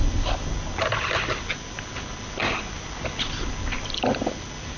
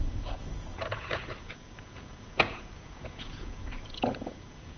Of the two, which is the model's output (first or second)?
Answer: second